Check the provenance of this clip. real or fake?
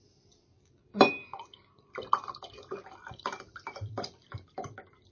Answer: fake